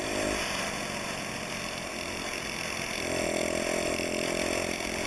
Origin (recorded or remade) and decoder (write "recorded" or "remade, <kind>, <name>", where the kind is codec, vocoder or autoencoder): recorded